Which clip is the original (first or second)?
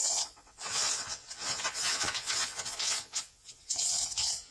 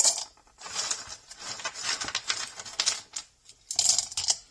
second